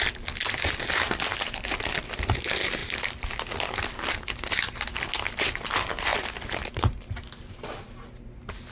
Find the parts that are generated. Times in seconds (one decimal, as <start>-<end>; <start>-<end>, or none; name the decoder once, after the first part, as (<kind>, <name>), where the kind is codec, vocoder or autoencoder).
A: none

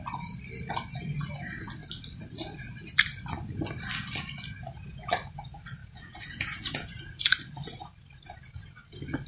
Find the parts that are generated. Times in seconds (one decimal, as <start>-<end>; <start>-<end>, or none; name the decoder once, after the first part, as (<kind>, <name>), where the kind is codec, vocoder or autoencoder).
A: 5.8-7.3 (vocoder, Vocos)

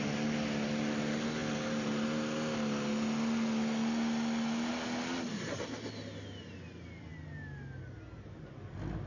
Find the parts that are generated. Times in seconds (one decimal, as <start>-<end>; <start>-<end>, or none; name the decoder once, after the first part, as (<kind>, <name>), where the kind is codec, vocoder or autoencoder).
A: none